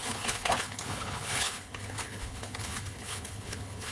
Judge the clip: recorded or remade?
remade